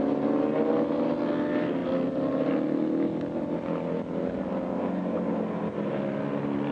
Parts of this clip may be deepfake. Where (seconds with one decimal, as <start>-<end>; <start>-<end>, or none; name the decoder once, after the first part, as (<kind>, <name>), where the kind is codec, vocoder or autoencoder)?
none